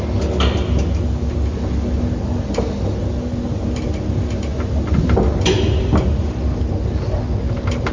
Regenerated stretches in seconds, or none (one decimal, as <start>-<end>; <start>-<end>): none